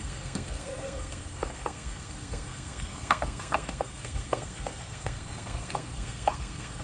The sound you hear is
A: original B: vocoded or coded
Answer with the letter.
B